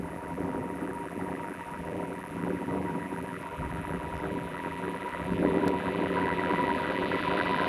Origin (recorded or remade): remade